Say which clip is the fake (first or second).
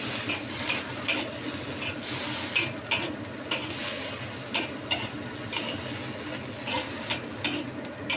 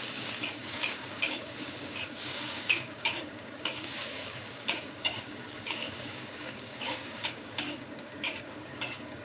second